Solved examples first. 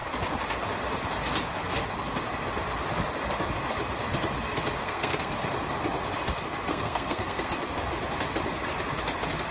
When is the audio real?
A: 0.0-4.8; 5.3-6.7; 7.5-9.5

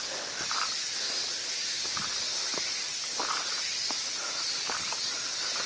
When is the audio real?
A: 0.0-5.7

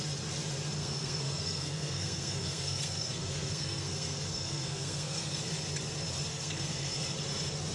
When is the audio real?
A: 0.0-0.8; 5.4-6.3; 6.9-7.7

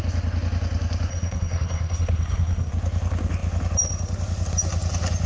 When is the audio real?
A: 0.0-1.1; 2.7-5.3

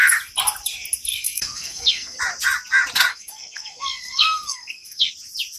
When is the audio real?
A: 0.0-1.1; 2.2-3.1; 5.1-5.6